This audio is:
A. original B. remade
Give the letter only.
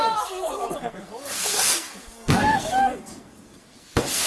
B